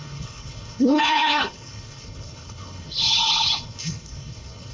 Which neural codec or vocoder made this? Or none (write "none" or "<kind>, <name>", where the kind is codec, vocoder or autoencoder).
codec, HILCodec